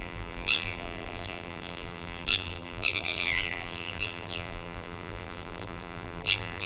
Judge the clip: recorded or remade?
remade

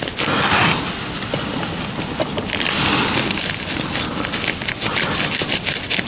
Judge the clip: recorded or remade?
recorded